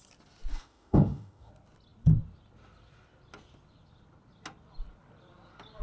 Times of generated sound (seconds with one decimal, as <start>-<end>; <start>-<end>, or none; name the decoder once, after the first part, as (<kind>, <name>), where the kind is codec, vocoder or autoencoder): 0.5-1.5 (autoencoder, DAC-VAE)